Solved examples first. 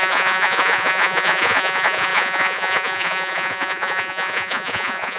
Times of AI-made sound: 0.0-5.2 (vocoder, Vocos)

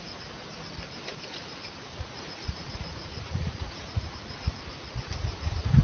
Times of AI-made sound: 1.1-4.6 (vocoder, Vocos)